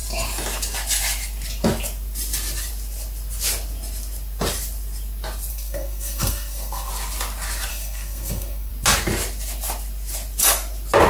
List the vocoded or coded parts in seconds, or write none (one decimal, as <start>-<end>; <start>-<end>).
5.5-6.9; 7.7-8.7